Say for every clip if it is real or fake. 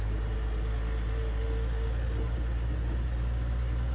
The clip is real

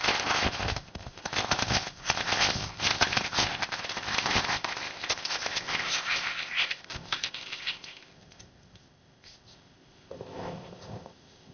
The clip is fake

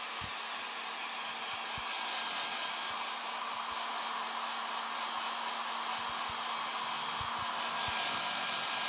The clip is real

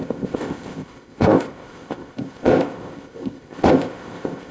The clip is fake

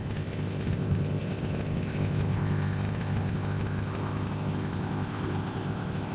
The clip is fake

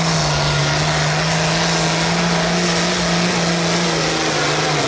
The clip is real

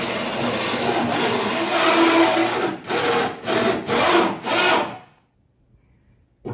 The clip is real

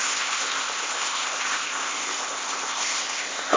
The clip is fake